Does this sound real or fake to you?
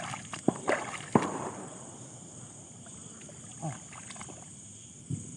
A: real